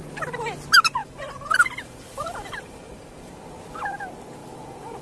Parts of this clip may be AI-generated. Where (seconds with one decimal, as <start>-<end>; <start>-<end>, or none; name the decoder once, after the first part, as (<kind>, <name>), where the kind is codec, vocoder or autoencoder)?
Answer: 1.0-3.5 (vocoder, BigVGAN v2); 4.4-5.0